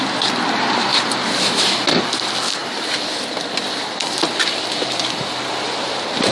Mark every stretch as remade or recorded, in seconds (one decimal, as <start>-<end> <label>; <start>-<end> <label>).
0.0-6.3 recorded